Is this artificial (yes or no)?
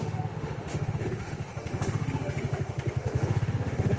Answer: yes